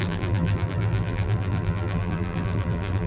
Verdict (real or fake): fake